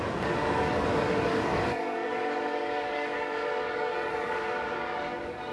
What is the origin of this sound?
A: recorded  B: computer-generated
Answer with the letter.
B